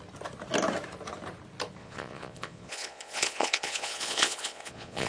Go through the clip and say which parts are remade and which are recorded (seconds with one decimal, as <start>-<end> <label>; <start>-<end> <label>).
0.0-1.8 recorded; 1.8-5.1 remade